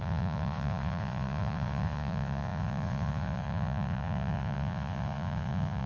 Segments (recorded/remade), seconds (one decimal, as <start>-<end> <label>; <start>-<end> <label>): 0.0-5.9 remade